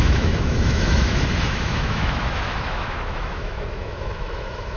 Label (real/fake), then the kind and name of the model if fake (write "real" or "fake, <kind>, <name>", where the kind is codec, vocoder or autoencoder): fake, autoencoder, DAC-VAE